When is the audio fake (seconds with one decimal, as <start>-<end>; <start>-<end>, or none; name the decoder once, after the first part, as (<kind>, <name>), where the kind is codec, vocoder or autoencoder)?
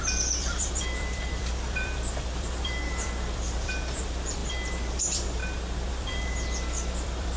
0.0-4.4 (vocoder, BigVGAN v2); 4.9-5.4; 5.9-7.4